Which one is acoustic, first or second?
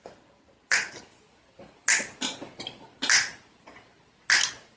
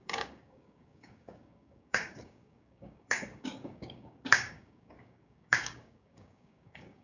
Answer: first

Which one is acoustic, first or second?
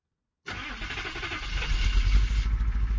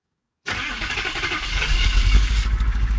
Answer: first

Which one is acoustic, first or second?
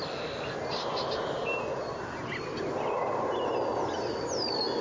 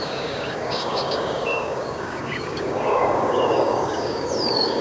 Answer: first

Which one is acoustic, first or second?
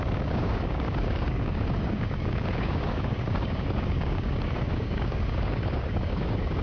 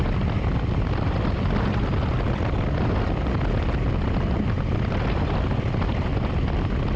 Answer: second